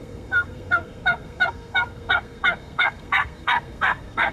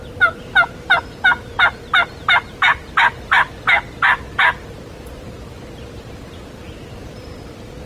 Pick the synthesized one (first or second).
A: first